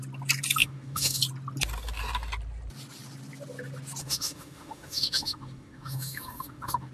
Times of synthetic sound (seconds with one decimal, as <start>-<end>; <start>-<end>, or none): 0.6-1.2; 4.0-6.9